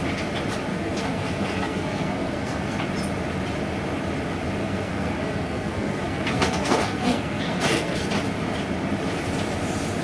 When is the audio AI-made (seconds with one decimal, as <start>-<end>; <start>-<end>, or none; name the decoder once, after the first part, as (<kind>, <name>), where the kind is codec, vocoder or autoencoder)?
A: 0.7-2.8 (codec, SNAC); 4.6-8.1